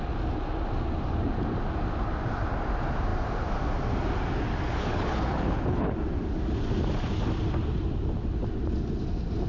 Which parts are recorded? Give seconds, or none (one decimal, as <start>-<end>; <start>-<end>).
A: 0.0-4.7; 5.9-9.5